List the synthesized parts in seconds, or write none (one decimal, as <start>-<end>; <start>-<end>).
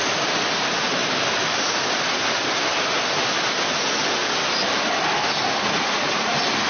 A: none